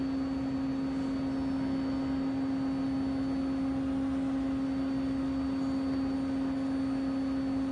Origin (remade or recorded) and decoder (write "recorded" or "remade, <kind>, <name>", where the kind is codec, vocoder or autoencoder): recorded